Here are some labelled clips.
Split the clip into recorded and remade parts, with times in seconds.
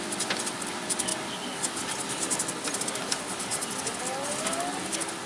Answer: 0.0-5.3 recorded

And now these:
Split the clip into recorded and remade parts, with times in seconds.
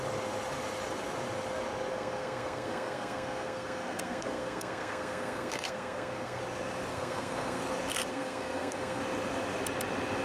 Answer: 0.0-1.9 recorded; 1.9-6.4 remade; 6.4-6.9 recorded; 6.9-7.6 remade; 7.6-8.1 recorded; 8.1-9.0 remade; 9.0-10.2 recorded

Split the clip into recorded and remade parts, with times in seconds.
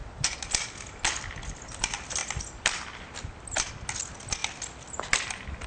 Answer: 0.0-2.2 recorded; 2.2-3.7 remade; 3.7-5.7 recorded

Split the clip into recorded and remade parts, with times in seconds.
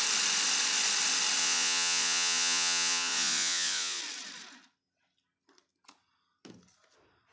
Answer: 0.0-1.4 recorded; 1.4-4.0 remade; 4.0-7.3 recorded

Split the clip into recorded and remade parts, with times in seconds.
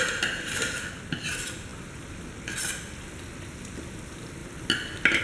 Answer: 0.0-5.2 recorded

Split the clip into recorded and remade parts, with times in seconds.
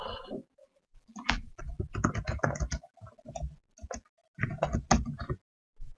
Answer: 0.0-0.6 recorded; 0.6-1.6 remade; 1.6-6.0 recorded